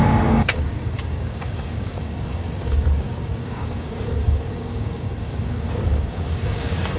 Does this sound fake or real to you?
fake